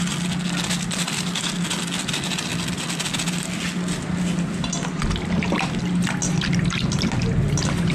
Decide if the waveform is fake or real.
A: real